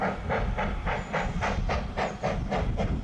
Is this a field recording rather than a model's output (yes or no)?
yes